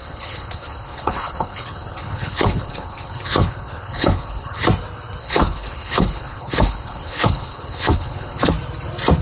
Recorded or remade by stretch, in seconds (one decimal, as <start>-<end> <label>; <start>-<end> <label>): 0.0-4.6 remade; 4.6-5.2 recorded; 5.2-8.5 remade; 8.5-9.2 recorded